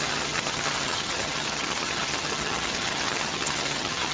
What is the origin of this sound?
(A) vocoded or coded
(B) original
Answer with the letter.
A